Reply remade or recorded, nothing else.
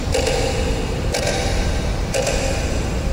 recorded